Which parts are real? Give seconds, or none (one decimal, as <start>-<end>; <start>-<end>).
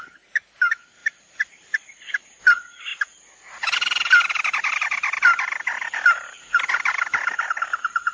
0.0-1.0; 2.4-8.1